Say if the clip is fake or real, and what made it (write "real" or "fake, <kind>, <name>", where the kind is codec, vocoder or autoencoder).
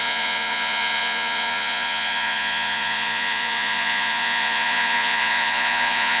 fake, vocoder, Vocos